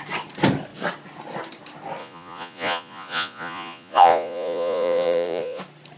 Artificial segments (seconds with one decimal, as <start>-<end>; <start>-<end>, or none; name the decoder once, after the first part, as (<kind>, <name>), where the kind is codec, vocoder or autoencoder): 2.0-5.6 (vocoder, Vocos)

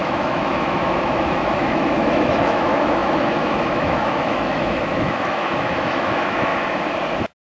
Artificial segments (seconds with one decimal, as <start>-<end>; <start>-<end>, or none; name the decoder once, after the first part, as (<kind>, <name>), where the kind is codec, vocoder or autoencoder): 0.0-6.5 (autoencoder, DAC-VAE)